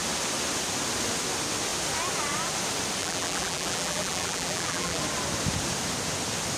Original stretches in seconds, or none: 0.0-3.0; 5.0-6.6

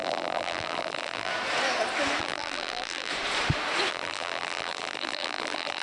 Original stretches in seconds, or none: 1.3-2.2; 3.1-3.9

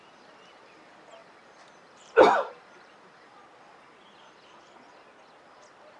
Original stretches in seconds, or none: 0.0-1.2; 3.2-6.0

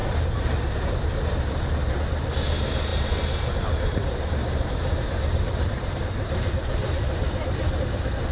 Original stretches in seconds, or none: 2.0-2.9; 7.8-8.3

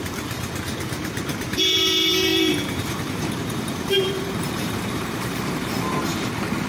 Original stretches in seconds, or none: none

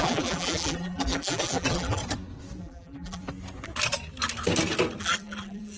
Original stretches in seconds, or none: 2.0-2.6; 3.2-5.0